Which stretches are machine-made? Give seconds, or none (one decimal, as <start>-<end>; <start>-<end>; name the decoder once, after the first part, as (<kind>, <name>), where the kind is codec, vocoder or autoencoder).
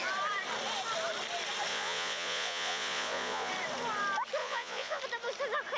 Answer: 1.7-3.5 (vocoder, Vocos); 4.4-5.0